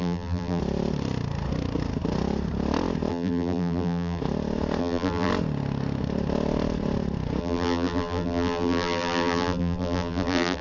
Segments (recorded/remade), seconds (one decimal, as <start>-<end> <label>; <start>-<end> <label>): 0.0-0.6 remade; 0.6-3.1 recorded; 3.1-4.2 remade; 4.2-4.8 recorded; 4.8-5.3 remade; 5.3-7.4 recorded; 7.4-10.6 remade